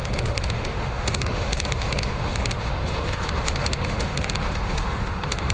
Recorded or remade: remade